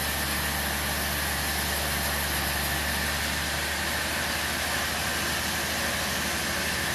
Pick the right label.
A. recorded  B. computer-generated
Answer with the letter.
A